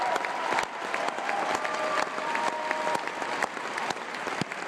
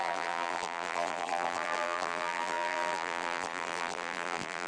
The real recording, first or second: first